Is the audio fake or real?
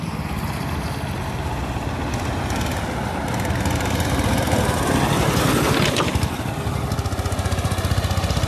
real